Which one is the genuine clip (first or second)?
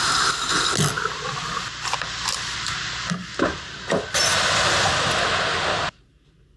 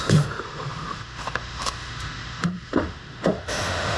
first